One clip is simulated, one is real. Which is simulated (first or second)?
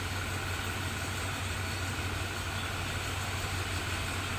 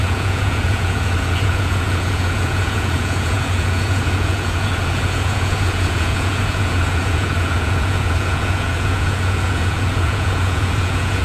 second